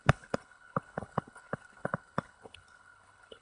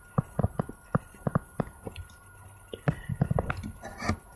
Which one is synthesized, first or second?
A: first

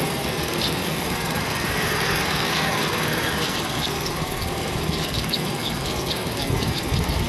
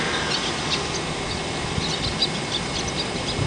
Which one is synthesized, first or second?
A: first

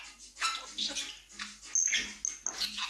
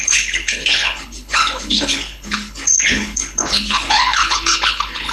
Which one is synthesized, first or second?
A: second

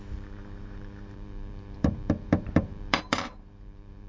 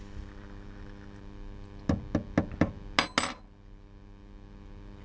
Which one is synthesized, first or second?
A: first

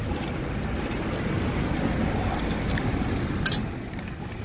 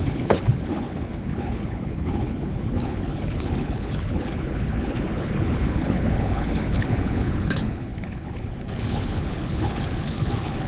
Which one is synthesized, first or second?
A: second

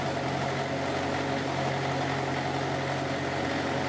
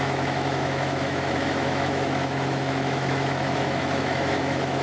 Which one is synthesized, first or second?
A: second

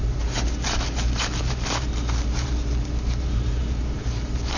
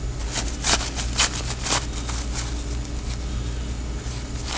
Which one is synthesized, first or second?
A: first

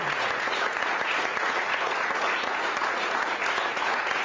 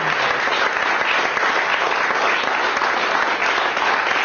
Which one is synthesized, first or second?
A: first